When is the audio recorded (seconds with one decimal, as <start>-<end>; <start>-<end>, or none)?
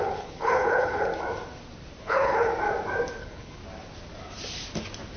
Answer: 1.1-2.0; 2.5-3.2; 3.6-5.2